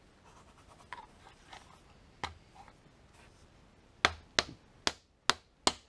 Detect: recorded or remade recorded